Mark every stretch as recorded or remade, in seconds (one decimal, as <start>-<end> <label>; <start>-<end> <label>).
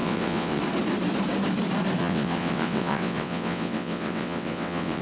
0.0-0.6 remade; 0.6-2.0 recorded; 2.0-5.0 remade